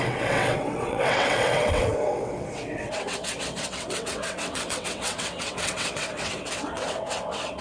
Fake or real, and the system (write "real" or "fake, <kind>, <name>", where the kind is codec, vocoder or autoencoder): fake, vocoder, WaveNeXt